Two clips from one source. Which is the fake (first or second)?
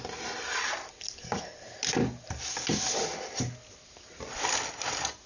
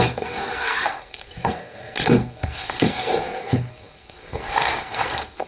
second